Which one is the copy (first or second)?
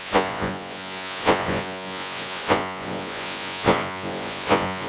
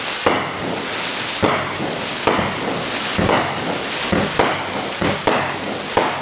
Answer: first